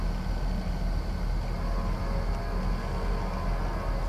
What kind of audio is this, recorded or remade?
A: recorded